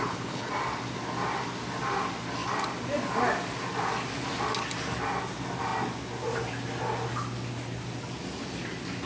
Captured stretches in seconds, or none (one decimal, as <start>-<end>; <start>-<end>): 0.5-9.1